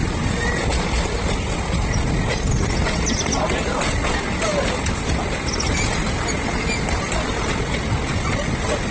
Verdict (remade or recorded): recorded